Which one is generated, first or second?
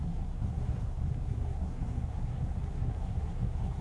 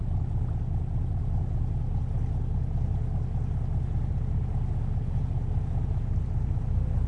first